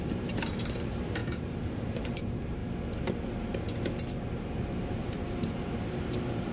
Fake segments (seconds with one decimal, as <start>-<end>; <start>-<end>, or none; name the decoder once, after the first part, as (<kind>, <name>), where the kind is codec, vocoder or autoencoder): 0.0-2.6 (vocoder, BigVGAN v2); 4.9-6.5